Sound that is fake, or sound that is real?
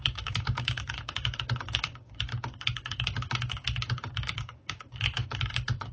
fake